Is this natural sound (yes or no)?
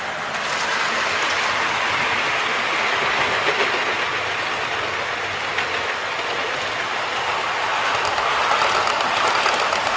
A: yes